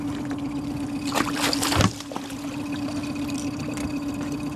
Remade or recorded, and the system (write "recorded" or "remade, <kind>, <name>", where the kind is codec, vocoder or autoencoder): recorded